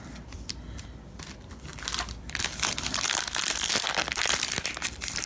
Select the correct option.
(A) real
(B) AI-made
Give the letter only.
B